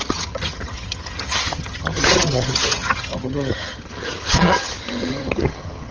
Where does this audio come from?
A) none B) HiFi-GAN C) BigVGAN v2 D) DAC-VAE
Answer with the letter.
B